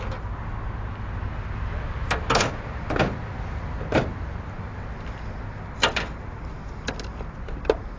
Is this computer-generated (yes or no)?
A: no